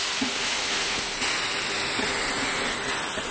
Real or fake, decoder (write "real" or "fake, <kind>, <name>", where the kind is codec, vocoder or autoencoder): real